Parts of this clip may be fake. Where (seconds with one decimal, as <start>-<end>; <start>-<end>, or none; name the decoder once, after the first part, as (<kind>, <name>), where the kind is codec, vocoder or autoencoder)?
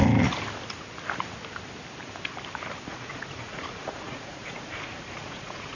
2.9-5.8 (vocoder, Vocos)